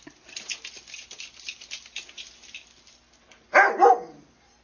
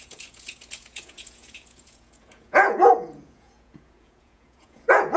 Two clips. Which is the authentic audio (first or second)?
first